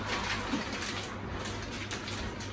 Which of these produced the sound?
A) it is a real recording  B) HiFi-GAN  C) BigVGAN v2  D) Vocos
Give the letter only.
A